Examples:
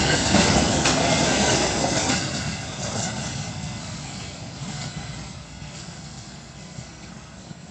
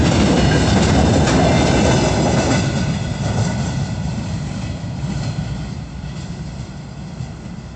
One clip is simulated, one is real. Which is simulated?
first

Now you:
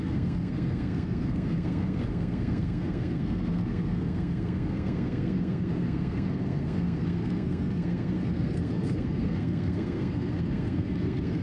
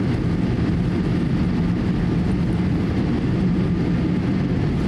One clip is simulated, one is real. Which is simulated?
first